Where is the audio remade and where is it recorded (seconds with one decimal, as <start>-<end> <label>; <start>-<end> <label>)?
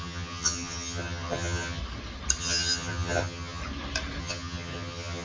0.0-1.8 remade; 1.8-2.4 recorded; 2.4-3.6 remade; 3.6-4.2 recorded; 4.2-5.2 remade